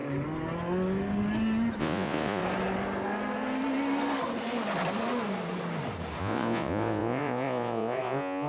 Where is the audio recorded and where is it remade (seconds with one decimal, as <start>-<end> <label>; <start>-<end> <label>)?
0.0-1.8 recorded; 1.8-2.4 remade; 2.4-6.2 recorded; 6.2-8.5 remade